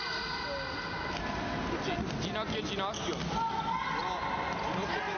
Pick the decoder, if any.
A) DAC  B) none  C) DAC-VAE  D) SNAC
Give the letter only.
B